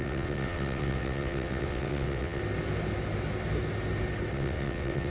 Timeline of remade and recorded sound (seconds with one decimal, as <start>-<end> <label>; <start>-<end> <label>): 0.0-2.4 remade; 2.4-4.3 recorded; 4.3-5.1 remade